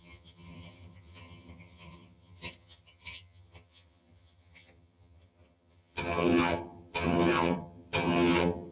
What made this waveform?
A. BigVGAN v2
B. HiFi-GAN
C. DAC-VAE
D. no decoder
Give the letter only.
B